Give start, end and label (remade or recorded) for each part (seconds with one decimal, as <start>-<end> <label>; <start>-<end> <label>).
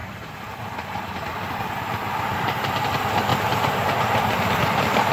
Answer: 0.0-1.6 remade; 1.6-3.3 recorded; 3.3-5.1 remade